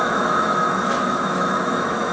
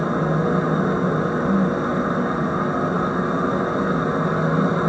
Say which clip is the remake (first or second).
first